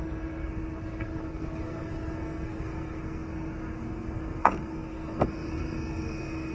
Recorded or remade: remade